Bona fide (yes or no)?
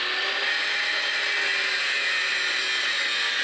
yes